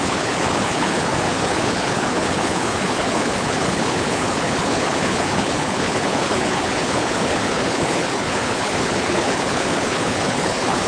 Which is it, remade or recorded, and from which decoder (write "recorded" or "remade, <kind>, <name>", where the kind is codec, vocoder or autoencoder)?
remade, codec, HILCodec